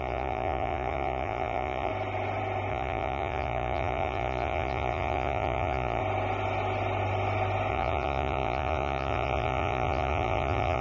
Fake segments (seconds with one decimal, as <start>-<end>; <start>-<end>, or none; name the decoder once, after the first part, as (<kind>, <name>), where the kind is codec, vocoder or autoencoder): 0.0-1.9 (vocoder, Vocos); 2.7-6.0; 7.7-10.8